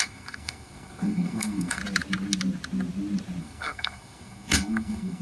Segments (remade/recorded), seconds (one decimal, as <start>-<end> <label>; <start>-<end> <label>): 0.0-1.8 remade; 1.8-3.4 recorded; 3.4-5.2 remade